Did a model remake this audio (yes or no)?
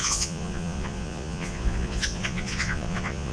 yes